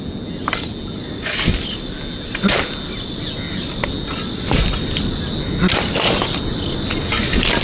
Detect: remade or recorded recorded